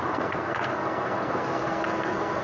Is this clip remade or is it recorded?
remade